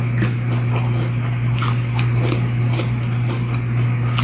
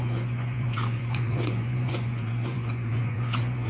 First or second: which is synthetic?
second